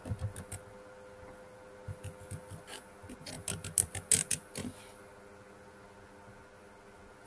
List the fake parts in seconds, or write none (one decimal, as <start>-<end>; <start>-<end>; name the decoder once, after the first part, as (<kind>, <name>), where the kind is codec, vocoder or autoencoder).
none